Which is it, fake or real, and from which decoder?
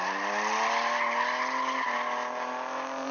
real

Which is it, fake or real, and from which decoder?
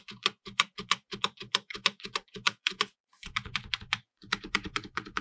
fake, vocoder, Vocos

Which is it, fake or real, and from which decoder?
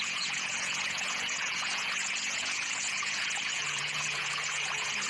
fake, vocoder, Vocos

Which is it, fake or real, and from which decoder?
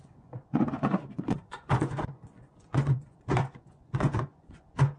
fake, vocoder, Vocos